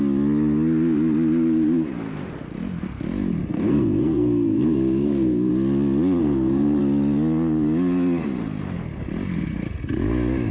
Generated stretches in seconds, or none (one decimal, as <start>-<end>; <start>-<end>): 3.5-5.5; 6.2-6.8